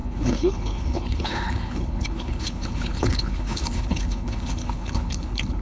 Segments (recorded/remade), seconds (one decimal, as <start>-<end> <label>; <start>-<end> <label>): 0.0-5.6 remade